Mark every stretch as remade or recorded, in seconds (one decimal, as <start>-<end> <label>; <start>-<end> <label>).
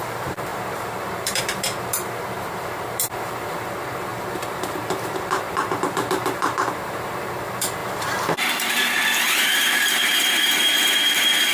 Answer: 0.0-11.5 remade